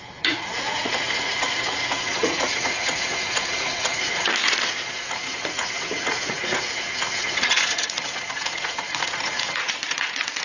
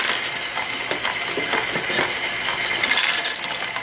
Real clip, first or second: second